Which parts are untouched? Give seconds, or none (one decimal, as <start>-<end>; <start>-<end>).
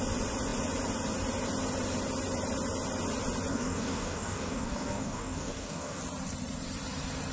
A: 0.0-3.5; 6.0-7.3